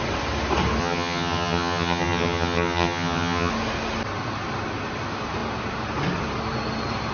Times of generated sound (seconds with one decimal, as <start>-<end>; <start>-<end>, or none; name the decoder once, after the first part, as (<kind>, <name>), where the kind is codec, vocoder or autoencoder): 0.8-3.5 (vocoder, HiFi-GAN)